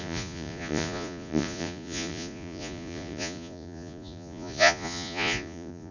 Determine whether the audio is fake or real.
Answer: fake